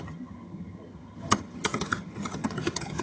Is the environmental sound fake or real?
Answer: fake